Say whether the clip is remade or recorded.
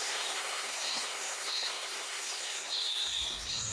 remade